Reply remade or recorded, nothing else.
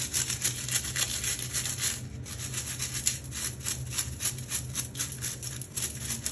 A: recorded